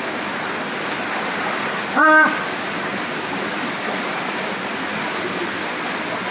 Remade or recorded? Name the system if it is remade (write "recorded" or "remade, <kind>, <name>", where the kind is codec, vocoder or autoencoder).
recorded